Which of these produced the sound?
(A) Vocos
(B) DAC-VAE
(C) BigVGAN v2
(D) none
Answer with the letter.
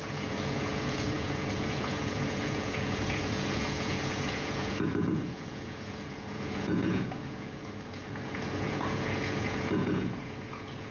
A